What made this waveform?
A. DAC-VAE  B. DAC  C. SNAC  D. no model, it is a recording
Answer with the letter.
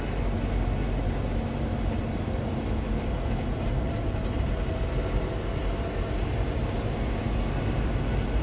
D